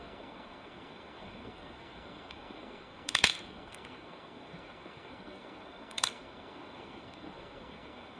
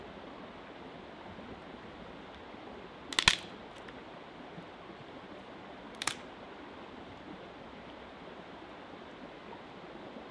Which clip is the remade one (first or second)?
first